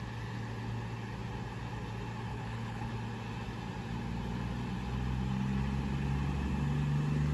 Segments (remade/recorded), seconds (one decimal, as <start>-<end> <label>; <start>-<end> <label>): 0.0-2.3 recorded; 2.3-2.9 remade; 2.9-7.3 recorded